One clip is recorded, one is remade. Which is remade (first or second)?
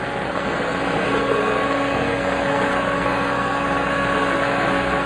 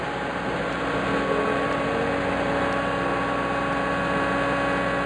first